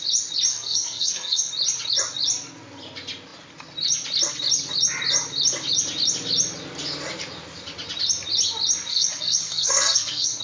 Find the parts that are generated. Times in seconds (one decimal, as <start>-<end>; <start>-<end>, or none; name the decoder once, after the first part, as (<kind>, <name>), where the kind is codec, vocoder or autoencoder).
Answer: 0.5-1.5 (codec, SNAC); 8.9-10.4